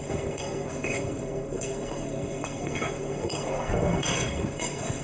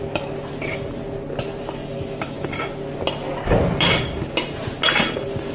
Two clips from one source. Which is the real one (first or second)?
second